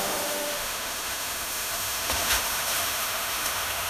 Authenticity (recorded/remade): remade